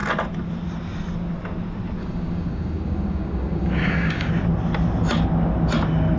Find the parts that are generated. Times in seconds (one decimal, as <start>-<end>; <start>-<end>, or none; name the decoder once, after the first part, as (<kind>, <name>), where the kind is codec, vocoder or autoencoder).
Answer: 2.0-4.3 (codec, DAC)